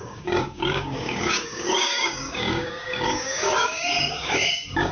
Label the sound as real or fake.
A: fake